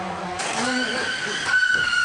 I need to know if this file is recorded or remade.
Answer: remade